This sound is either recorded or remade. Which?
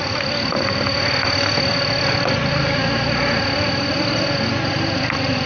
recorded